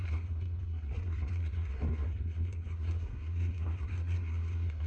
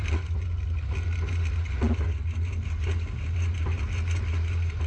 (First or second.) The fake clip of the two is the first